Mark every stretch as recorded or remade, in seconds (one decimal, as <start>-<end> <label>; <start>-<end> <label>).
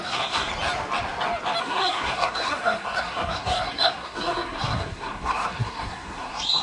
0.0-0.5 remade; 0.5-1.6 recorded; 1.6-6.6 remade